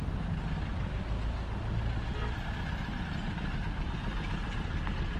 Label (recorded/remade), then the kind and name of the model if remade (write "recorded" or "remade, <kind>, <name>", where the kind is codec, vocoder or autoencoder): recorded